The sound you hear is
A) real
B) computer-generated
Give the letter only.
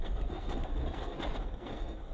B